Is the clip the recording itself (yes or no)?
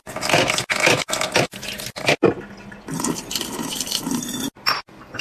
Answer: yes